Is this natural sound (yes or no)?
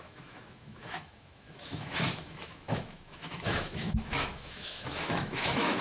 no